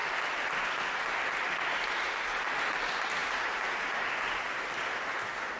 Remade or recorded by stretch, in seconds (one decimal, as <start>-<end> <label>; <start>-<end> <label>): 0.0-5.6 recorded